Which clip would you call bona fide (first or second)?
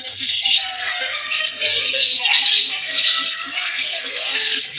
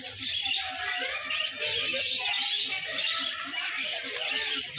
second